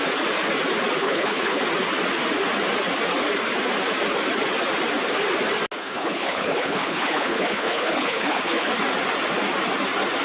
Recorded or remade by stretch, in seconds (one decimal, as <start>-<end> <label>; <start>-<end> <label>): 0.0-1.0 recorded; 1.0-1.6 remade; 1.6-5.8 recorded; 5.8-8.7 remade; 8.7-10.2 recorded